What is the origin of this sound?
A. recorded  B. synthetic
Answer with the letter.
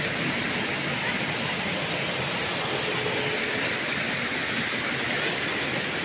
A